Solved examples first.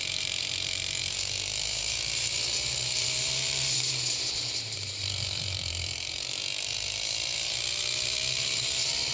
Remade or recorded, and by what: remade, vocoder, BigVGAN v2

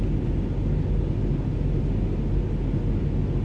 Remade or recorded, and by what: recorded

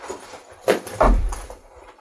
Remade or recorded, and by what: remade, vocoder, BigVGAN v2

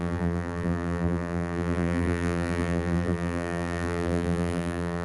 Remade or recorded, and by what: remade, vocoder, BigVGAN v2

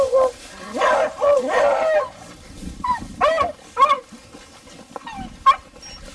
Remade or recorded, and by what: recorded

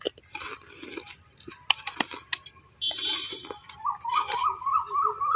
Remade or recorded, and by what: recorded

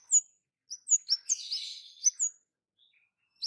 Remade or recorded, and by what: recorded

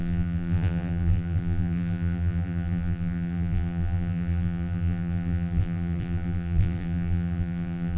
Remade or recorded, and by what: remade, vocoder, BigVGAN v2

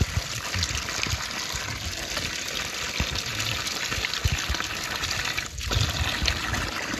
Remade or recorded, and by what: recorded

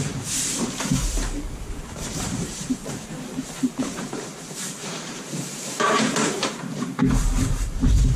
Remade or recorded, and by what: remade, vocoder, BigVGAN v2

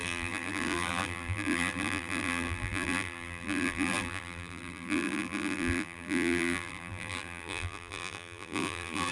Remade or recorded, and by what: remade, vocoder, BigVGAN v2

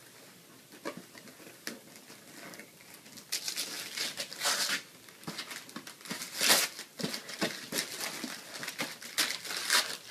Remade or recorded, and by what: recorded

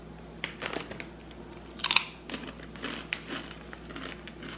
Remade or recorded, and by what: recorded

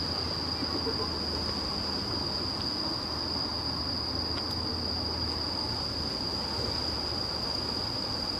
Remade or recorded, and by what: recorded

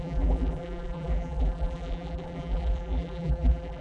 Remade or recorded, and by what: remade, vocoder, BigVGAN v2